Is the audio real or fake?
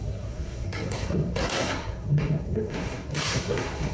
fake